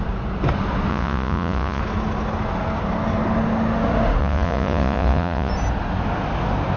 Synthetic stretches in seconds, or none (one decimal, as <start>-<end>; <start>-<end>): 0.9-1.8; 4.2-5.5